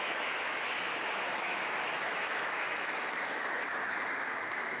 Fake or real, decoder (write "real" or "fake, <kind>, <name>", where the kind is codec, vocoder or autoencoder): fake, autoencoder, DAC-VAE